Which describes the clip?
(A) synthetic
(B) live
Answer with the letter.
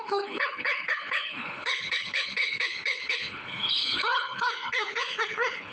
A